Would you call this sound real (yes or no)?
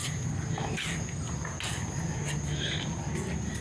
yes